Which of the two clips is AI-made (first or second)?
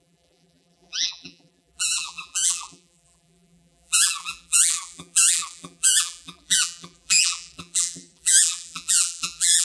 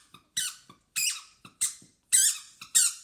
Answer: first